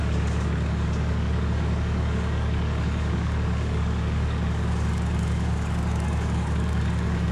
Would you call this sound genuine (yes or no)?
no